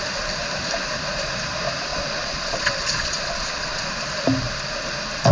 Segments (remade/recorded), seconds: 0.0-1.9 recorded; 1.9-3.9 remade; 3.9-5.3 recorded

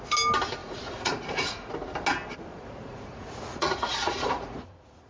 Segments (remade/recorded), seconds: 0.0-0.6 recorded; 0.6-1.7 remade; 1.7-2.5 recorded; 2.5-5.1 remade

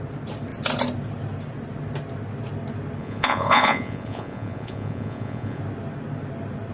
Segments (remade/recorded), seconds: 0.0-3.0 recorded; 3.0-5.6 remade; 5.6-6.7 recorded

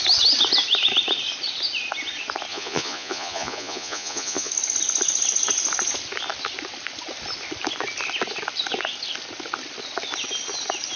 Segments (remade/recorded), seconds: 0.0-2.5 recorded; 2.5-4.5 remade; 4.5-11.0 recorded

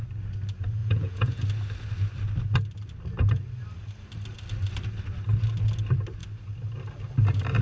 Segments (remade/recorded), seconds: 0.0-0.8 recorded; 0.8-1.4 remade; 1.4-7.6 recorded

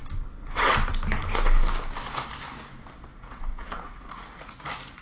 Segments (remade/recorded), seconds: 0.0-3.1 recorded; 3.1-5.0 remade